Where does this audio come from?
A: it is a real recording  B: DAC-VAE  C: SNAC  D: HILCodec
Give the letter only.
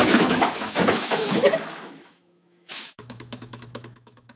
B